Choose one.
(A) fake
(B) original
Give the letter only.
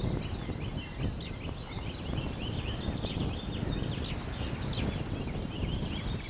B